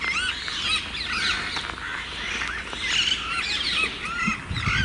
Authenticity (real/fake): real